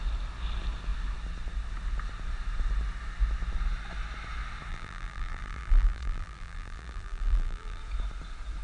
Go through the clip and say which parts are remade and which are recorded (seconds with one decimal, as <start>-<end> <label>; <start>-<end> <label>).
0.0-4.7 recorded; 4.7-7.8 remade; 7.8-8.6 recorded